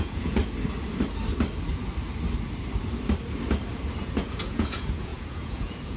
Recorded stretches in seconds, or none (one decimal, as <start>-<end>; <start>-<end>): 0.4-4.0